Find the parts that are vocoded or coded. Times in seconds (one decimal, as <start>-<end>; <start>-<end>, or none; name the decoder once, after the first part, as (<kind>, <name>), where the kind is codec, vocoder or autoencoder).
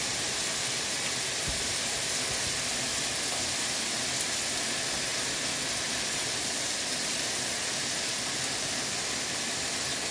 none